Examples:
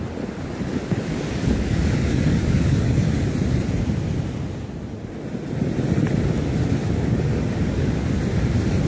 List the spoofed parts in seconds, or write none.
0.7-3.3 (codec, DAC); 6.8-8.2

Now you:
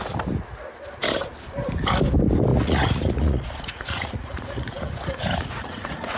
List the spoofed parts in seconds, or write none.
2.5-6.2 (vocoder, Vocos)

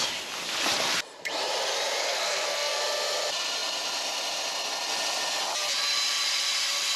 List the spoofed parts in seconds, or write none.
2.0-2.8 (codec, SNAC)

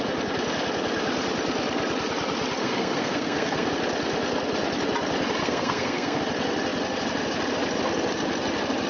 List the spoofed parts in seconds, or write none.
2.6-3.7 (codec, SNAC); 5.4-6.2

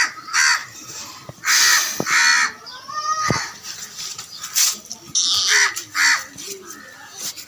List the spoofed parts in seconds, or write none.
0.6-1.6 (vocoder, BigVGAN v2)

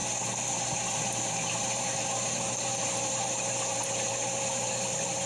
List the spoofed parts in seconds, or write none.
1.3-5.3 (vocoder, BigVGAN v2)

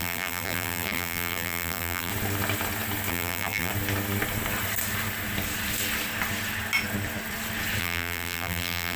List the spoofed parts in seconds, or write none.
0.0-2.1 (vocoder, BigVGAN v2); 3.1-3.7; 7.8-9.0